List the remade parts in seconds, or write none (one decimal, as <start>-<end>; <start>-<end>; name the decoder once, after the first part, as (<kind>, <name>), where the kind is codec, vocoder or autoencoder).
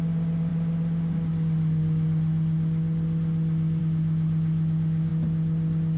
none